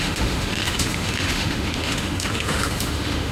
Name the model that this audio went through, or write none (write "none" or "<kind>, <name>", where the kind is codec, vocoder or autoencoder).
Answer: autoencoder, DAC-VAE